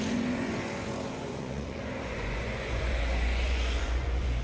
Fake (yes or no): yes